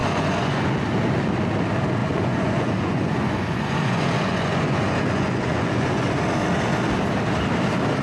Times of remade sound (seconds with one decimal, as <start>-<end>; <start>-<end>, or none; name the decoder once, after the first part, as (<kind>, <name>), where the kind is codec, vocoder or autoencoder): 0.0-0.6 (vocoder, Vocos); 2.0-6.2